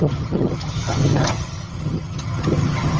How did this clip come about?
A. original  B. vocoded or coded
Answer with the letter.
B